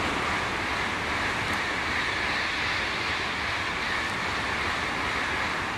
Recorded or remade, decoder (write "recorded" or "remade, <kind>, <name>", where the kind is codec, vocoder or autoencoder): recorded